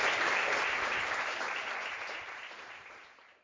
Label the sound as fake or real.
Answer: fake